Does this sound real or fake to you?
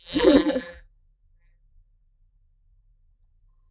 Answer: fake